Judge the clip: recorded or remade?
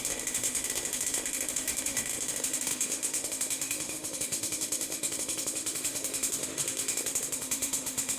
remade